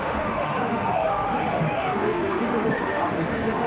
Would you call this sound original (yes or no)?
no